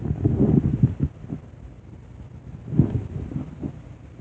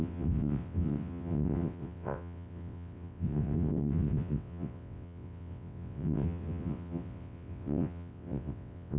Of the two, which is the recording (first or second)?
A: first